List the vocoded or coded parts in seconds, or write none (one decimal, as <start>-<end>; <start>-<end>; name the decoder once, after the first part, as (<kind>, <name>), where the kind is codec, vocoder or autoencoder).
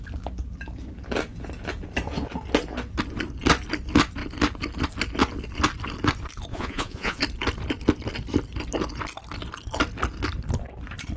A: 6.5-7.2 (vocoder, Vocos)